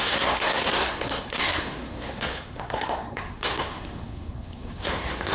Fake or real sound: fake